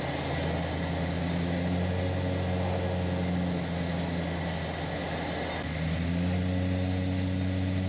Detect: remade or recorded recorded